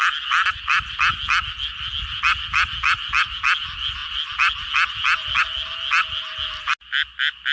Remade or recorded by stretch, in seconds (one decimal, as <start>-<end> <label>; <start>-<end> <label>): 0.0-7.5 recorded